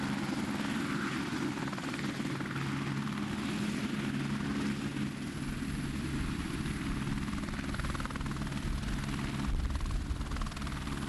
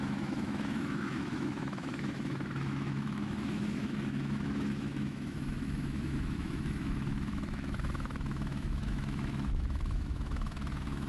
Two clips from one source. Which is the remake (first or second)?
second